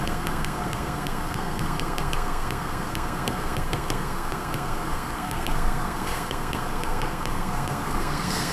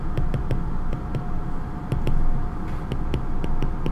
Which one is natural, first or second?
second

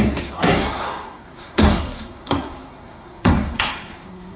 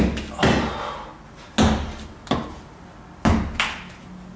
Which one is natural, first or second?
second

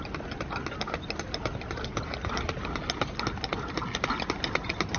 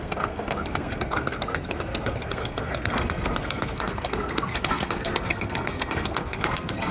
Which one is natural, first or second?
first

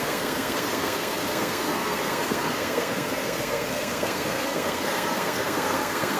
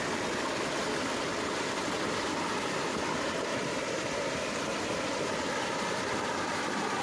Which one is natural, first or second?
second